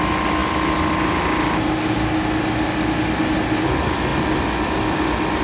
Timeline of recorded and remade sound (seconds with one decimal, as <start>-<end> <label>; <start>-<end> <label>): 0.0-5.4 recorded